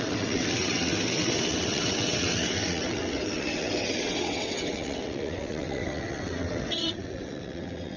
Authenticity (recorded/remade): remade